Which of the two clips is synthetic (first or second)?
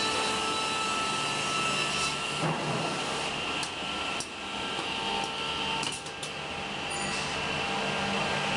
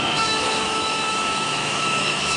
second